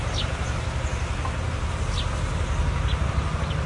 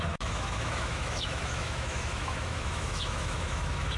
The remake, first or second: second